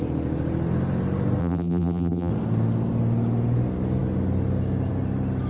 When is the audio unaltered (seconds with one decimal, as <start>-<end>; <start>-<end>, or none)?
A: 0.0-1.4; 2.3-5.5